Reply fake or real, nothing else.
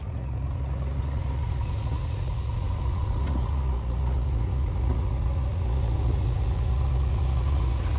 fake